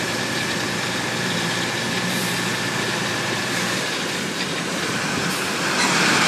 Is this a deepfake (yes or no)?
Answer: yes